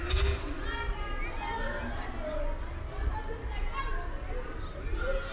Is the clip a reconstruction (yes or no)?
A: no